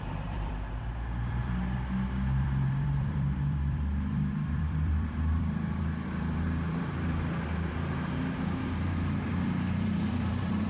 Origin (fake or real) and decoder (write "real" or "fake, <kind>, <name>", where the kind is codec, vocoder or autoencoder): fake, vocoder, BigVGAN v2